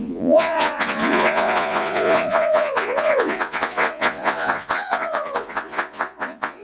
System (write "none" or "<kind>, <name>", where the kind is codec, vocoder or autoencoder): vocoder, Vocos